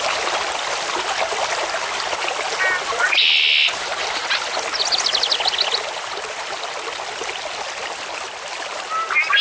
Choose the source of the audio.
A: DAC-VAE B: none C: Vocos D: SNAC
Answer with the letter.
B